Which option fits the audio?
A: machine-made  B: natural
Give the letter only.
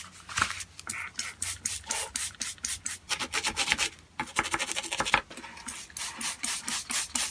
B